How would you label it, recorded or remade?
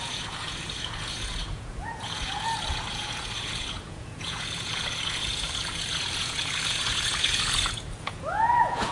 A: remade